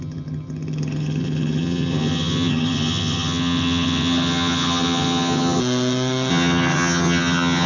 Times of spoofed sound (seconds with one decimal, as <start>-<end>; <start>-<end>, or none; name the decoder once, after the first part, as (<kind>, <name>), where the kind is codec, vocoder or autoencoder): 0.0-5.6 (vocoder, HiFi-GAN); 6.3-7.7